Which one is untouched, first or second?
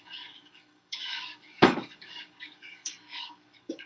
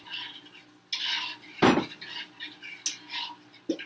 second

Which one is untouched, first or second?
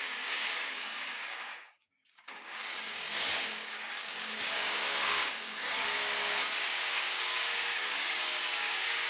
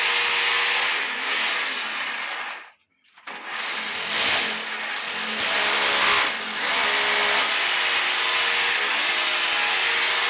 second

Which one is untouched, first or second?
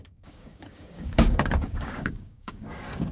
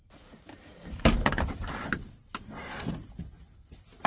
second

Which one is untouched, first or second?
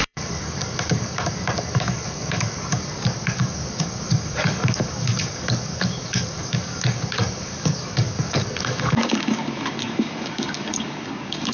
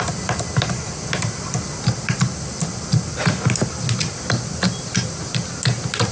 second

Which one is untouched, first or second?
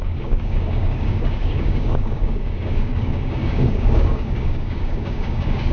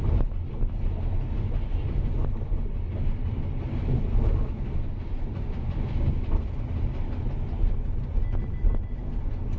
second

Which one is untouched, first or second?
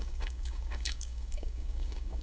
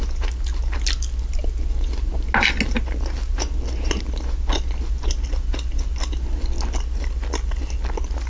second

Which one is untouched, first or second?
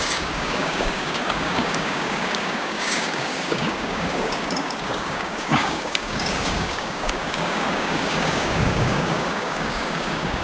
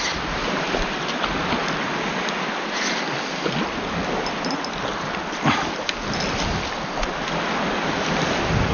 second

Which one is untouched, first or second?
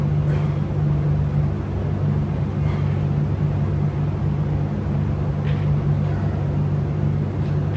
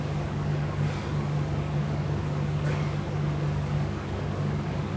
first